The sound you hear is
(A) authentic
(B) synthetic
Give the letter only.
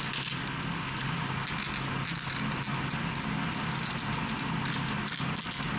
A